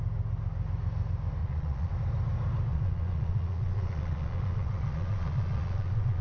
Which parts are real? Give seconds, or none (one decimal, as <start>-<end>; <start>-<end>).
0.0-1.4; 1.9-2.7